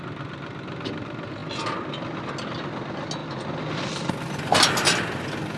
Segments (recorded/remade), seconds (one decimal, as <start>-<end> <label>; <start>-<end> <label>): 0.0-5.6 recorded

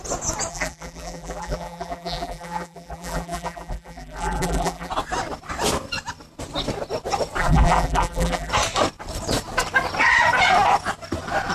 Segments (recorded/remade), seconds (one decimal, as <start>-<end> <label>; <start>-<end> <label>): 0.0-0.5 recorded; 0.5-4.9 remade; 4.9-7.4 recorded; 7.4-8.5 remade; 8.5-11.5 recorded

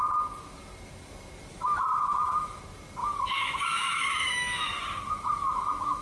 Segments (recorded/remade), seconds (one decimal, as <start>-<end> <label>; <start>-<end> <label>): 0.0-1.5 recorded; 1.5-2.6 remade; 2.6-3.0 recorded; 3.0-6.0 remade